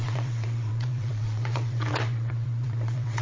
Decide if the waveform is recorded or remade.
remade